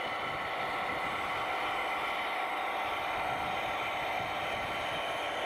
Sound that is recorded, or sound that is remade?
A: recorded